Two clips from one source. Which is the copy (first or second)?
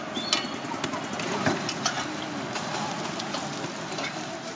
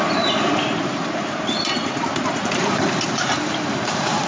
second